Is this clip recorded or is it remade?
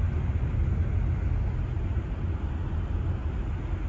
recorded